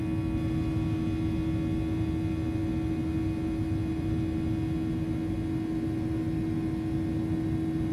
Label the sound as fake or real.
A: real